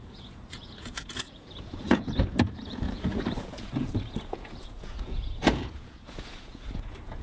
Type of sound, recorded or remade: remade